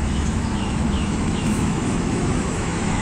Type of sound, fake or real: fake